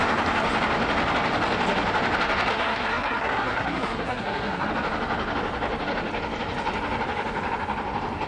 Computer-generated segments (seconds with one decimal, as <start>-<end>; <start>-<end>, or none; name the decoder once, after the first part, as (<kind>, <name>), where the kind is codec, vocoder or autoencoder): 2.5-4.7 (codec, SNAC)